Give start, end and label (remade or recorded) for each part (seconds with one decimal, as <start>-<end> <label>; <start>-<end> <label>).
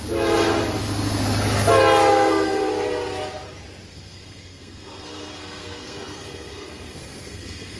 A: 0.0-2.1 recorded; 2.1-2.7 remade; 2.7-3.9 recorded; 3.9-7.8 remade